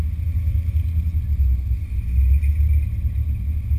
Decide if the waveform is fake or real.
real